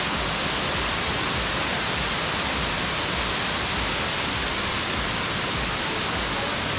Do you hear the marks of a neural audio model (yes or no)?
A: no